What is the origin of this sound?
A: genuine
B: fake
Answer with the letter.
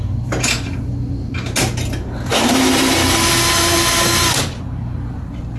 A